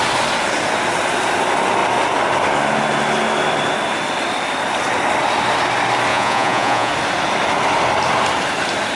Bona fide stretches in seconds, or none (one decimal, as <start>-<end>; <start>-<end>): 0.0-6.1; 6.9-9.0